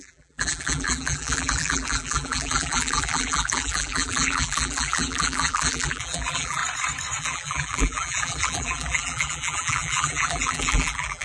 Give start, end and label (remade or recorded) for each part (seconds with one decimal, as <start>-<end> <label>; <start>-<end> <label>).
0.0-6.6 remade; 6.6-7.2 recorded; 7.2-11.2 remade

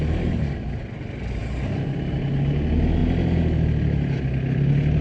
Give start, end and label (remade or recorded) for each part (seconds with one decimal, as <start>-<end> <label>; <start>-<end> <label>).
0.0-5.0 recorded

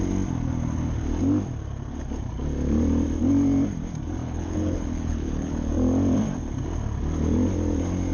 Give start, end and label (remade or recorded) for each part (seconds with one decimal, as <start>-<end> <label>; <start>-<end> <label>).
0.0-4.2 recorded; 4.2-5.7 remade; 5.7-8.1 recorded

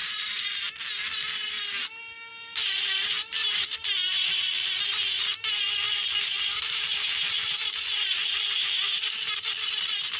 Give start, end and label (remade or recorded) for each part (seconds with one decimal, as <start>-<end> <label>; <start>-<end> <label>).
0.0-2.3 recorded; 2.3-4.4 remade; 4.4-6.1 recorded; 6.1-9.5 remade; 9.5-10.2 recorded

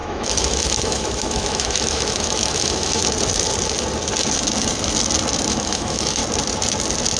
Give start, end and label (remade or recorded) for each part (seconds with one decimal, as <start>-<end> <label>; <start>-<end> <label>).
0.0-3.0 remade; 3.0-5.5 recorded; 5.5-6.2 remade; 6.2-7.2 recorded

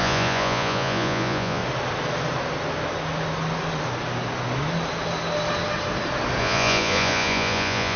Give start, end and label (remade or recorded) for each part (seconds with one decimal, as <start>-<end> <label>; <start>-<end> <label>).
0.0-1.6 remade; 1.6-6.4 recorded; 6.4-8.0 remade

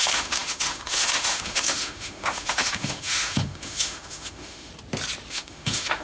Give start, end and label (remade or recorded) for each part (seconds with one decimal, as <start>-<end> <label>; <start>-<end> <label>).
0.0-4.7 remade; 4.7-5.3 recorded; 5.3-6.0 remade